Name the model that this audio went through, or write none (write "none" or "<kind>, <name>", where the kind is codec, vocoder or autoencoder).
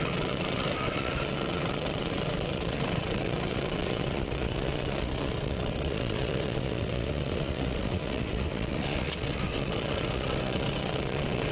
vocoder, WaveNeXt